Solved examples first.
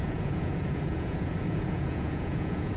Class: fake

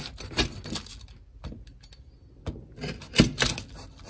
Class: real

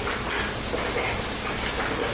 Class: real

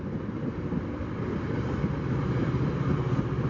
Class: fake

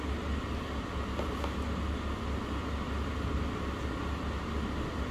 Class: real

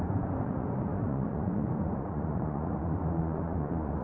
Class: fake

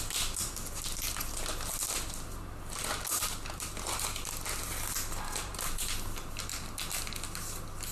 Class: real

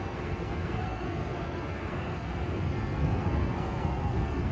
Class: fake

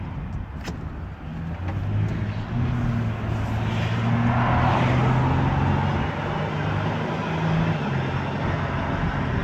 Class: real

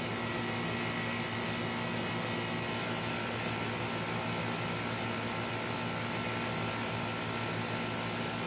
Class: real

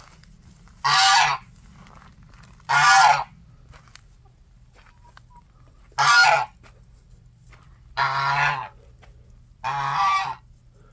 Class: real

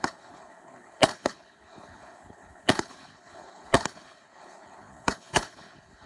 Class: fake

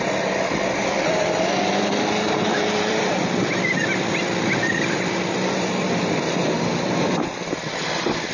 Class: fake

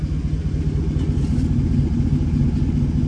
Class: real